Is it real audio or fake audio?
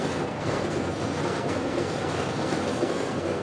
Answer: fake